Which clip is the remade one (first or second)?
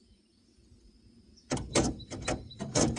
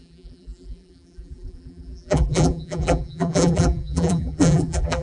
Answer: second